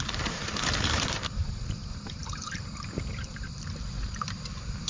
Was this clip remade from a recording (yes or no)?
yes